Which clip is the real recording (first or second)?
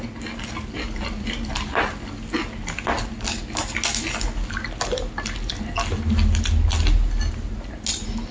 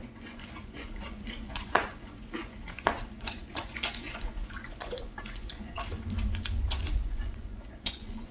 first